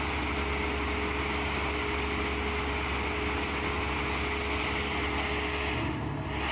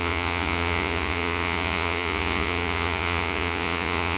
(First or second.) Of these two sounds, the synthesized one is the second